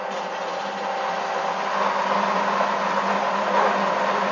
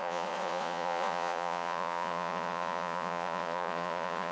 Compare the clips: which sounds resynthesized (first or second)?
second